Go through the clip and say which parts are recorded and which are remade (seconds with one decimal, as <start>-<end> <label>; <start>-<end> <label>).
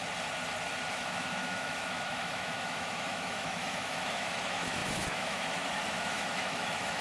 0.0-0.9 recorded; 0.9-7.0 remade